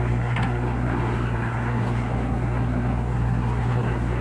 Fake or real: fake